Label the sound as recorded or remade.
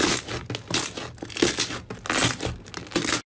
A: recorded